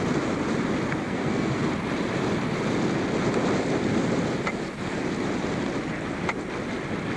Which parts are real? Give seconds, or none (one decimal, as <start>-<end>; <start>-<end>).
0.0-1.0; 1.6-7.2